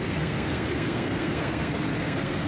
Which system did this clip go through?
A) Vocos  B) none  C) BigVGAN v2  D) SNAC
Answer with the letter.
D